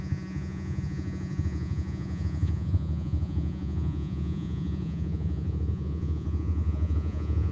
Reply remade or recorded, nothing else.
remade